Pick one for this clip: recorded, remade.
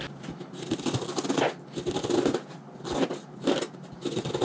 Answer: recorded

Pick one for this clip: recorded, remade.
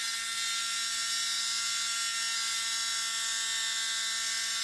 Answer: recorded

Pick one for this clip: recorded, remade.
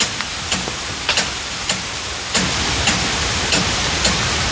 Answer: recorded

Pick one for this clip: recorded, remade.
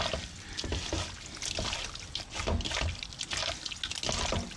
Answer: recorded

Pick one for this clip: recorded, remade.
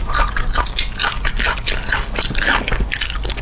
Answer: recorded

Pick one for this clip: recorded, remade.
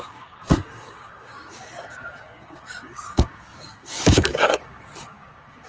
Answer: remade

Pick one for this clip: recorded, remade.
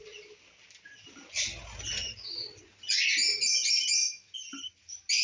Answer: recorded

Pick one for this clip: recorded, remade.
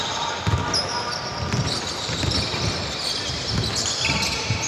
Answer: recorded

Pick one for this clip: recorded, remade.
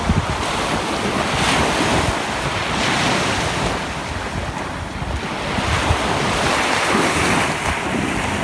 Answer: recorded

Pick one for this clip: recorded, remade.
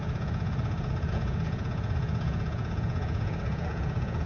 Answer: remade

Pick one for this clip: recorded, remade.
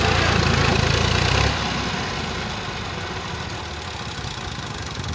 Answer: recorded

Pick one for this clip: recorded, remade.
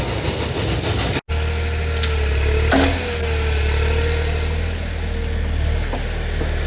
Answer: recorded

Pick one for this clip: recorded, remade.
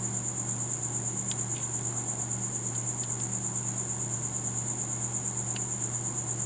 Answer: recorded